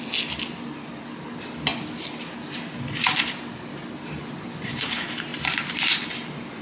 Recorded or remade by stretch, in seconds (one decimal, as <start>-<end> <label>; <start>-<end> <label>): 0.0-6.6 recorded